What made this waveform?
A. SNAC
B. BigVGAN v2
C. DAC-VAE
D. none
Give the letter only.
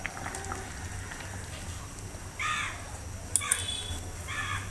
D